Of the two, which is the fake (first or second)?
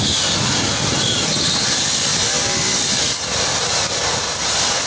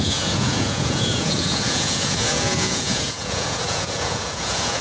second